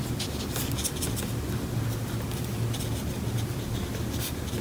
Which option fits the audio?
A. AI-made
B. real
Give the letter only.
B